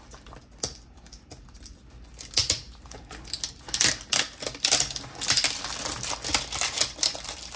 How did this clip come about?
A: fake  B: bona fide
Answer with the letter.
B